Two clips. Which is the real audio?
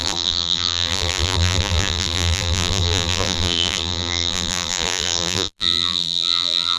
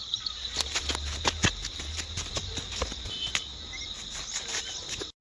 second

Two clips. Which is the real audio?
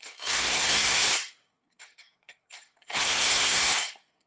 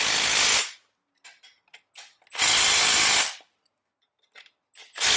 second